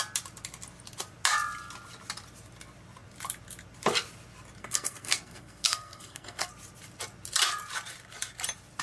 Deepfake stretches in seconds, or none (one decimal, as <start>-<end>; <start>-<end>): 4.6-6.5